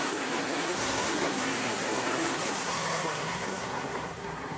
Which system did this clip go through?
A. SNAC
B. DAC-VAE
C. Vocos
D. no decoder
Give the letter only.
A